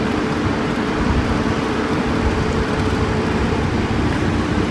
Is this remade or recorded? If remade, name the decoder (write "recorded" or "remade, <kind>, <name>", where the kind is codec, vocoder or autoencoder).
remade, vocoder, BigVGAN v2